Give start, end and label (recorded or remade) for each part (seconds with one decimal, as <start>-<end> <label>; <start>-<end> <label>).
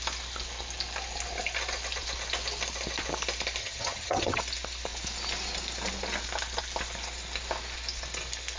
0.0-3.6 recorded; 3.6-4.4 remade; 4.4-8.6 recorded